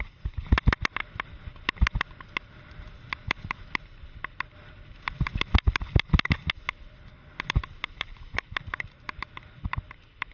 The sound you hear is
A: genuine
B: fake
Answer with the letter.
A